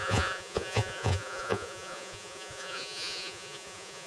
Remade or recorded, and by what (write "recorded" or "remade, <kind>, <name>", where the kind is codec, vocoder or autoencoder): remade, vocoder, Vocos